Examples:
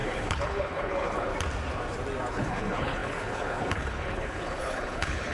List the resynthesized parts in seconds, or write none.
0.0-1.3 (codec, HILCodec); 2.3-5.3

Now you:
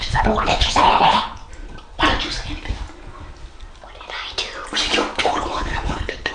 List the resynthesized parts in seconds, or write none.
0.0-1.4 (codec, HILCodec); 5.2-6.3